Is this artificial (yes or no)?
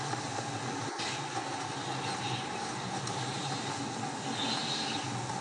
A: no